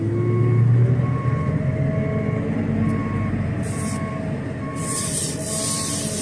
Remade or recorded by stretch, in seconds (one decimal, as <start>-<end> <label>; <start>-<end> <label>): 0.0-3.0 recorded; 3.0-5.3 remade; 5.3-6.2 recorded

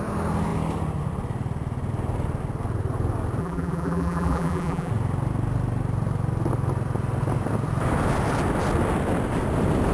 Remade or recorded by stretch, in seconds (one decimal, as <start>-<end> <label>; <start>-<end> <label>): 0.0-3.4 recorded; 3.4-4.9 remade; 4.9-9.9 recorded

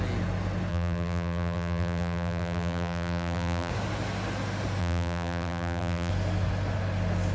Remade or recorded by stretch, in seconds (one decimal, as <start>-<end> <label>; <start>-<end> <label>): 0.0-0.7 recorded; 0.7-3.7 remade; 3.7-4.8 recorded; 4.8-6.1 remade; 6.1-7.3 recorded

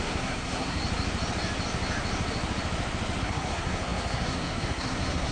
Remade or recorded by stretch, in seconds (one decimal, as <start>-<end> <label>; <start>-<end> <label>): 0.0-0.8 remade; 0.8-3.2 recorded; 3.2-5.3 remade

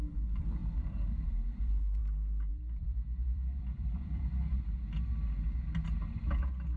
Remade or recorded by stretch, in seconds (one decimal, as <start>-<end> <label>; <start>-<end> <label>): 0.0-0.6 remade; 0.6-1.6 recorded; 1.6-2.0 remade; 2.0-2.5 recorded; 2.5-4.3 remade; 4.3-6.8 recorded

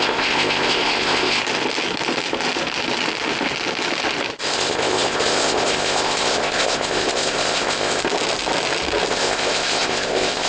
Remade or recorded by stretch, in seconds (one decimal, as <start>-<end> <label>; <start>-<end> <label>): 0.0-1.4 remade; 1.4-4.4 recorded; 4.4-8.0 remade; 8.0-9.1 recorded; 9.1-10.5 remade

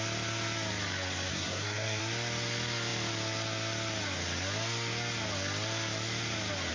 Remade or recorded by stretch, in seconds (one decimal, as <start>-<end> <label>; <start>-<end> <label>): 0.0-1.3 recorded; 1.3-2.0 remade; 2.0-6.7 recorded

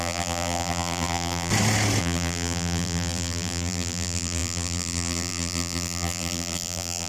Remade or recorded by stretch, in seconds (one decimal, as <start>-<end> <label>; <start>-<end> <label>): 0.0-1.5 remade; 1.5-2.0 recorded; 2.0-7.1 remade